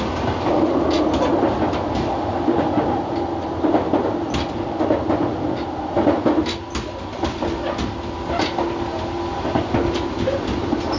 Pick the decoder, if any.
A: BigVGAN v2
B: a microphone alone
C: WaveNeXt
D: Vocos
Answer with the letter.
B